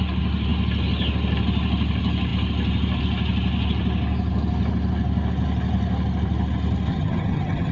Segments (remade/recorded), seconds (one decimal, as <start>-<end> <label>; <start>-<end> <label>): 0.0-6.9 recorded; 6.9-7.7 remade